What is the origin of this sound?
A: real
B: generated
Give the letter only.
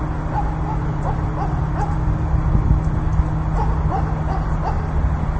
A